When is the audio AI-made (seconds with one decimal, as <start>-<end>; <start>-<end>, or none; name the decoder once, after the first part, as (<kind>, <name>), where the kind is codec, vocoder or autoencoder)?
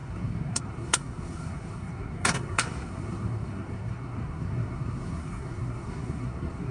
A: 0.0-6.7 (codec, SNAC)